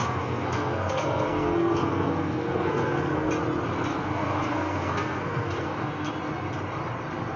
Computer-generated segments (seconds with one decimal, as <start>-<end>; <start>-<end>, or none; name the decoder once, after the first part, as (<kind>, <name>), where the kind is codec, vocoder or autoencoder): 0.0-3.3 (codec, SNAC); 3.9-6.1